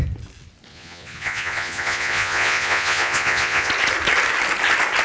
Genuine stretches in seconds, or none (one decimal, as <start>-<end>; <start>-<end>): 0.0-0.7; 3.7-5.0